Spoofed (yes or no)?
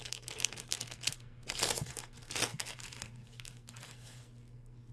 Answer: yes